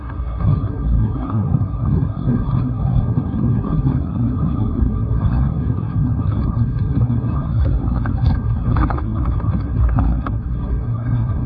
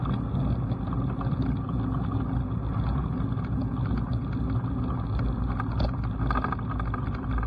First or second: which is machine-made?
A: first